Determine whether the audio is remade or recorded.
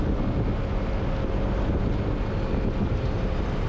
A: recorded